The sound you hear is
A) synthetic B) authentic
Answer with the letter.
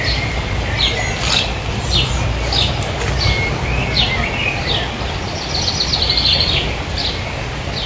B